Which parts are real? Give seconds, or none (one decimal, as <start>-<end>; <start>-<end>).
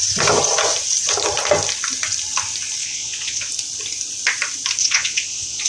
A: 0.0-2.8; 3.5-4.8